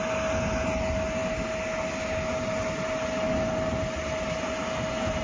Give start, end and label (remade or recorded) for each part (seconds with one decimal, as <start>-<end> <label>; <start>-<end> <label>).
0.0-5.2 recorded